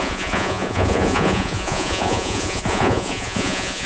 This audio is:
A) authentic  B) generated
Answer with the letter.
B